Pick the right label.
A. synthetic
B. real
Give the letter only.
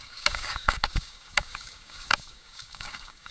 A